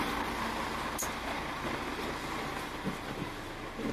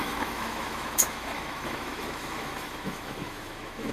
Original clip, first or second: first